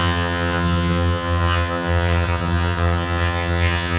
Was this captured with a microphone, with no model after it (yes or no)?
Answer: no